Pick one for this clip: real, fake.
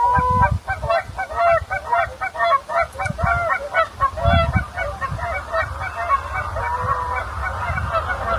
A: real